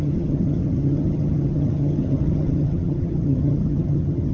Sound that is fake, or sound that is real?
fake